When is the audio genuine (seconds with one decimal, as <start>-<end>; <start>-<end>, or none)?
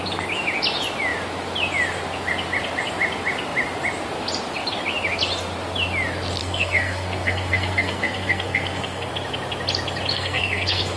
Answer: 0.0-6.4; 9.1-10.1